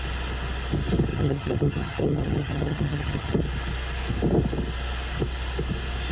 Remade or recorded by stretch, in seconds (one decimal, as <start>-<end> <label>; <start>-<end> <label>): 0.0-1.1 recorded; 1.1-3.4 remade; 3.4-6.1 recorded